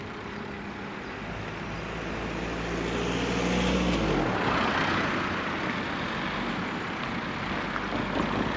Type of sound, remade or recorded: recorded